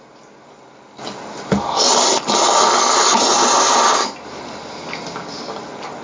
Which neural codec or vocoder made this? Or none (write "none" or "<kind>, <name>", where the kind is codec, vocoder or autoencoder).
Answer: none